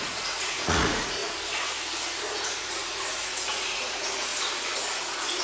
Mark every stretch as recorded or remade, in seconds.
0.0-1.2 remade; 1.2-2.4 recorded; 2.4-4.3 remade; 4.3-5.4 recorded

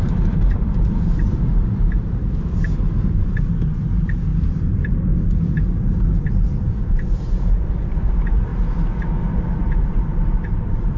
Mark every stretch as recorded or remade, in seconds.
0.0-4.3 remade; 4.3-6.2 recorded; 6.2-8.5 remade; 8.5-9.2 recorded; 9.2-11.0 remade

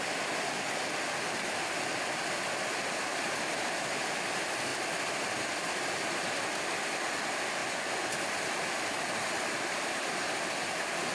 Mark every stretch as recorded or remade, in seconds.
0.0-7.6 recorded; 7.6-8.1 remade; 8.1-11.1 recorded

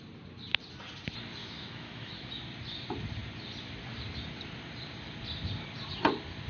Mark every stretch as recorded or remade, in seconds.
0.0-1.4 recorded; 1.4-2.3 remade; 2.3-6.5 recorded

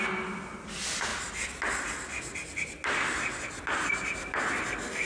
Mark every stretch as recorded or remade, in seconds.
0.0-5.1 recorded

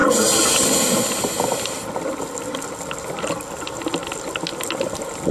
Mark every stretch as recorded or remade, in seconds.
0.0-5.3 recorded

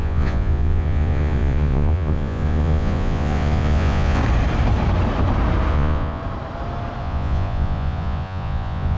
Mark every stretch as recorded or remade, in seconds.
0.0-4.2 remade; 4.2-5.7 recorded; 5.7-6.2 remade; 6.2-7.0 recorded; 7.0-9.0 remade

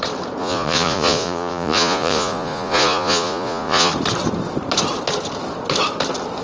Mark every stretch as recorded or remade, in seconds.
0.0-0.4 recorded; 0.4-3.9 remade; 3.9-6.4 recorded